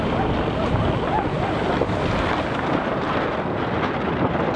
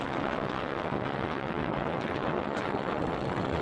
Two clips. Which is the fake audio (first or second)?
second